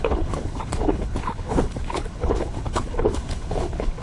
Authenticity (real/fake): fake